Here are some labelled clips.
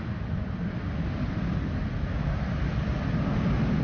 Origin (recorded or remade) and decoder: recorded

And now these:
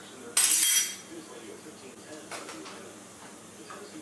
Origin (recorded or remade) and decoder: recorded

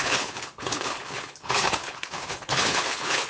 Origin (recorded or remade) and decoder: remade, codec, HILCodec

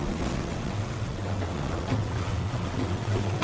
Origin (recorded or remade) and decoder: remade, vocoder, WaveNeXt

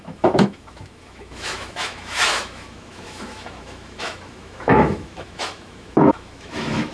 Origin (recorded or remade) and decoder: remade, autoencoder, DAC-VAE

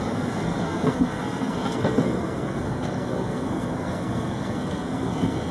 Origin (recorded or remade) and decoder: remade, codec, SNAC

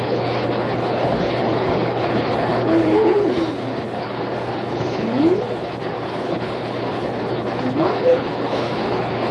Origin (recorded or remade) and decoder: remade, codec, HILCodec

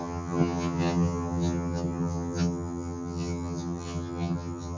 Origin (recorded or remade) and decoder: remade, vocoder, HiFi-GAN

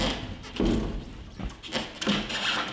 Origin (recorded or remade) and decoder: recorded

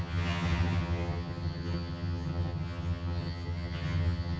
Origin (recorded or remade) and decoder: remade, vocoder, HiFi-GAN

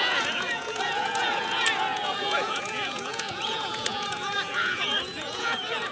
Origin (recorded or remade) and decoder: remade, vocoder, Vocos